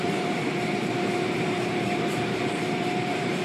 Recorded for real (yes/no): no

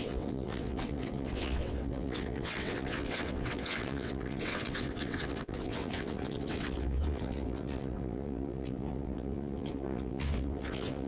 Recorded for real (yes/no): no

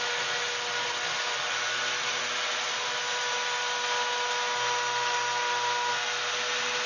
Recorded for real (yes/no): yes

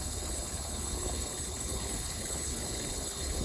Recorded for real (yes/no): no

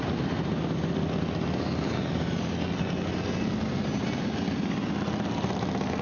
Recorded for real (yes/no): yes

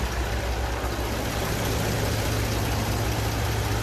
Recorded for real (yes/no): yes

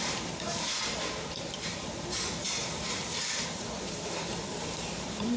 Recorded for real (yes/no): no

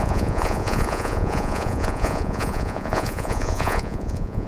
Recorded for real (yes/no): no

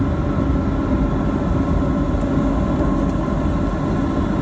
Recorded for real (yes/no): yes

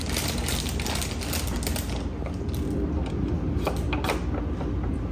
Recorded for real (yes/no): yes